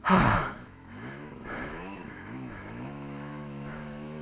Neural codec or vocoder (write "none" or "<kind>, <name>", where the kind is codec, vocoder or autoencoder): autoencoder, DAC-VAE